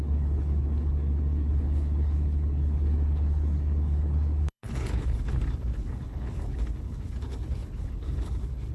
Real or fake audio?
fake